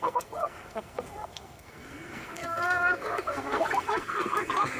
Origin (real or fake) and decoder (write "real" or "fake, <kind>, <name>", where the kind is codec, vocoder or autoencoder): fake, codec, SNAC